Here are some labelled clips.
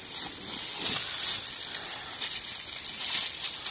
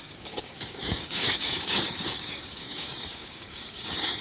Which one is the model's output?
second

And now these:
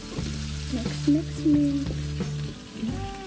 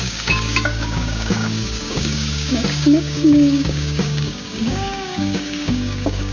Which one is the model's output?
second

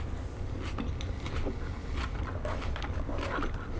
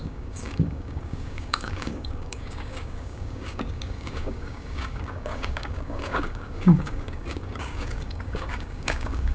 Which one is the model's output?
second